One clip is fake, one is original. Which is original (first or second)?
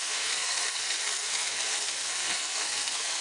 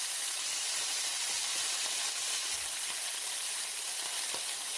second